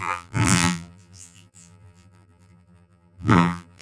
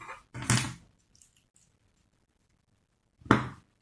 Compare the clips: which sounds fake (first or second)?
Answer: first